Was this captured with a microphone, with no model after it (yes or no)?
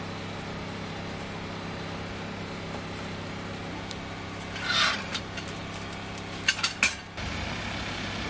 yes